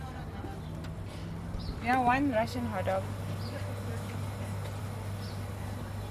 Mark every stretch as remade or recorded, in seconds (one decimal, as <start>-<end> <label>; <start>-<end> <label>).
0.0-6.1 recorded